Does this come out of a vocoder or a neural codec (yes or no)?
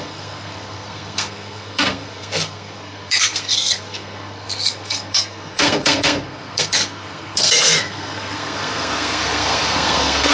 yes